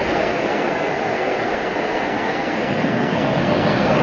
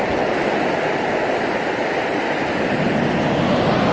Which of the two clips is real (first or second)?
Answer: second